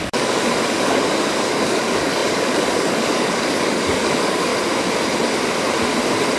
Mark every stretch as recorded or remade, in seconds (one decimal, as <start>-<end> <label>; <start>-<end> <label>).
0.0-4.5 remade; 4.5-6.4 recorded